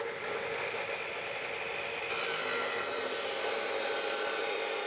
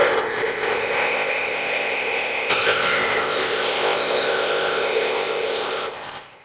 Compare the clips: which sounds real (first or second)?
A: first